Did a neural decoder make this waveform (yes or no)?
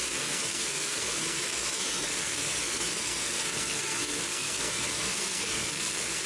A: yes